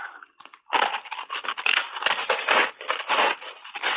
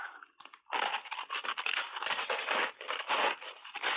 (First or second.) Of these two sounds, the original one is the first